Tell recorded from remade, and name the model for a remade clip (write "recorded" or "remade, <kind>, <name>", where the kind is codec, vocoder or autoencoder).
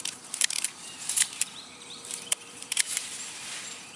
remade, vocoder, BigVGAN v2